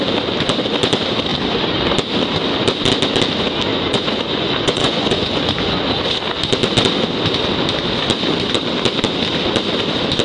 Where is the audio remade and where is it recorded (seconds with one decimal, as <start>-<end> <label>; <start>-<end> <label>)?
0.0-3.7 recorded; 3.7-5.8 remade; 5.8-10.2 recorded